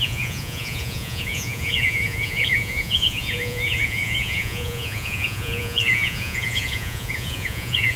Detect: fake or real fake